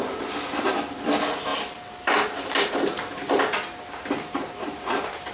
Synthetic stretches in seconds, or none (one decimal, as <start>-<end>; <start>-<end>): none